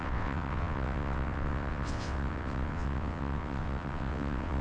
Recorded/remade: remade